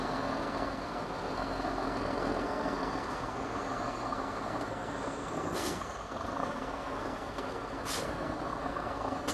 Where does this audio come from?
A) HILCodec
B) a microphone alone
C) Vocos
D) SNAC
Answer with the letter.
D